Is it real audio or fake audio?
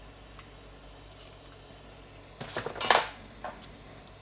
real